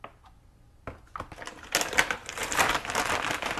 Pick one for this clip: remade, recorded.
recorded